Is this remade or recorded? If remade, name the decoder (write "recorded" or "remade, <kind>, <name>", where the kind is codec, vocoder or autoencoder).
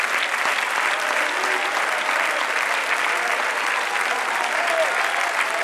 recorded